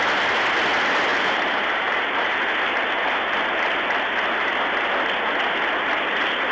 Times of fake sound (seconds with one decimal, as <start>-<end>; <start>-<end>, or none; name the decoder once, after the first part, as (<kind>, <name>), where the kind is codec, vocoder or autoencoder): 1.1-2.4 (vocoder, BigVGAN v2)